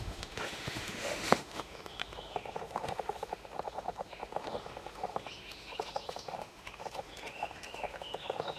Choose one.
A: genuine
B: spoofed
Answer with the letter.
B